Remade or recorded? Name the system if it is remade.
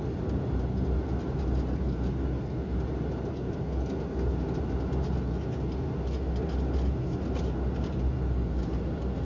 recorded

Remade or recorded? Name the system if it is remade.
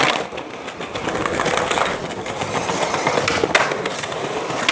recorded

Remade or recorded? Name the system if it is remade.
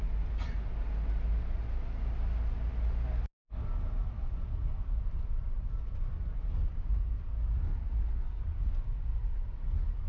recorded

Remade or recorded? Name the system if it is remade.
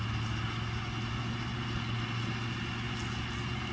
recorded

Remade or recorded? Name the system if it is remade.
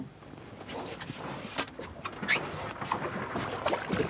recorded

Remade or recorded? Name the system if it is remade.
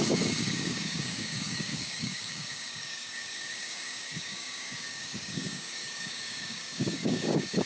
remade, codec, DAC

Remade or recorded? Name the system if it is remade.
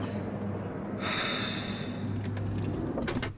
recorded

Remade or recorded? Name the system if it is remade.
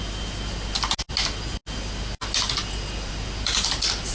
recorded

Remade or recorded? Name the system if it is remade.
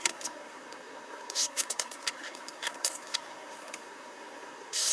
remade, codec, SNAC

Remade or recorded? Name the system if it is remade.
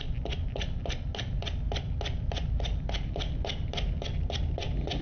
recorded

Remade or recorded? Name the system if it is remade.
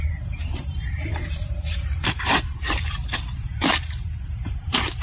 remade, vocoder, BigVGAN v2